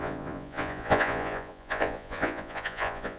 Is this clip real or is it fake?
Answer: fake